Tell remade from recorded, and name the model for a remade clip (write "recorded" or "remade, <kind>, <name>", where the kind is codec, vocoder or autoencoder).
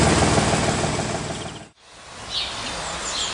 recorded